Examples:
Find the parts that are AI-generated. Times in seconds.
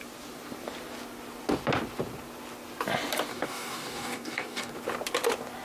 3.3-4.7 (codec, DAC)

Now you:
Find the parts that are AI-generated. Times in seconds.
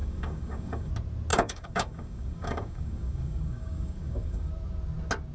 0.0-0.9 (codec, DAC); 1.3-4.5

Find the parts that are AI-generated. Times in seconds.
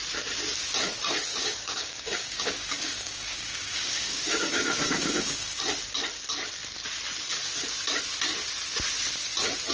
1.3-5.6 (codec, DAC)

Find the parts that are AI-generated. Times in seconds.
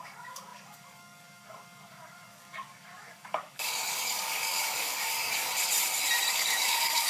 0.0-5.5 (codec, DAC); 6.3-7.1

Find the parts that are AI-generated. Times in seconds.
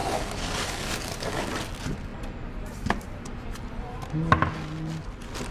0.0-1.5 (codec, DAC)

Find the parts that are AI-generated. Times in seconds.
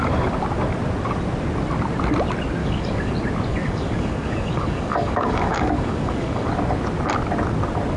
2.6-3.1 (codec, DAC); 3.5-6.5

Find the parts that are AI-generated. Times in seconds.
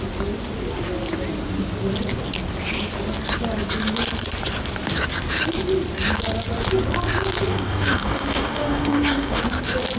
7.5-9.4 (codec, DAC)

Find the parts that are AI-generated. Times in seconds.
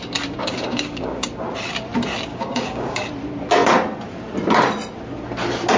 0.4-1.3 (codec, DAC); 2.3-3.1